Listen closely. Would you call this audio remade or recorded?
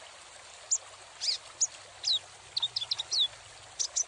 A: recorded